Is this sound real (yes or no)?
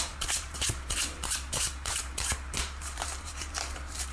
no